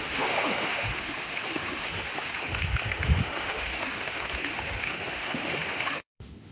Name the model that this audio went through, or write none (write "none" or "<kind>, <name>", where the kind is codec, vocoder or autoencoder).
autoencoder, DAC-VAE